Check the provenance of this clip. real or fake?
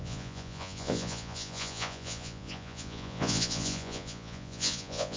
fake